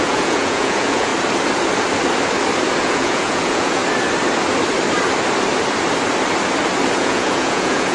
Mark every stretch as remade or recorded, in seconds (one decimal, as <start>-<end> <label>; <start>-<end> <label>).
0.0-1.1 remade; 1.1-2.8 recorded; 2.8-3.8 remade; 3.8-6.9 recorded; 6.9-7.9 remade